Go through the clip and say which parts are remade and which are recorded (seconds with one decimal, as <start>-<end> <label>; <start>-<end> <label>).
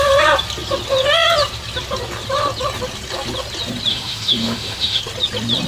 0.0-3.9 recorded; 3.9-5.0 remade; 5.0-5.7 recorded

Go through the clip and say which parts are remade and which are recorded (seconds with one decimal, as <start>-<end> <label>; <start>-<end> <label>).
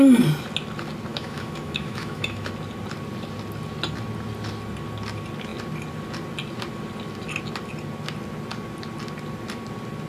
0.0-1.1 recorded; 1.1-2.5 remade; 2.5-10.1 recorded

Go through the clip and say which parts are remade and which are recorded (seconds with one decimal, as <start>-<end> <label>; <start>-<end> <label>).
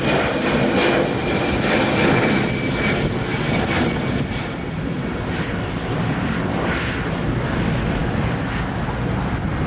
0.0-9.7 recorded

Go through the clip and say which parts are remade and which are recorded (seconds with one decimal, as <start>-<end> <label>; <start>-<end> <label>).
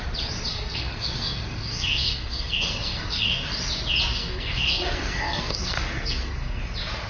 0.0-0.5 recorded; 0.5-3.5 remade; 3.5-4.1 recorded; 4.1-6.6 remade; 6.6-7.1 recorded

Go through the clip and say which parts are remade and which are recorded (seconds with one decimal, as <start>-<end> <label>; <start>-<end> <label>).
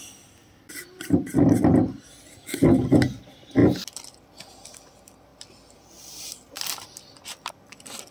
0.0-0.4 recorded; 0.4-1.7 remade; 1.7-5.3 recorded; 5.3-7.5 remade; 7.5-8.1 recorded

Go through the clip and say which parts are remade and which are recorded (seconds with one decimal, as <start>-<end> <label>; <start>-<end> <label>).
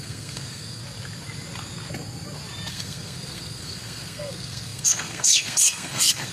0.0-0.8 remade; 0.8-2.7 recorded; 2.7-6.3 remade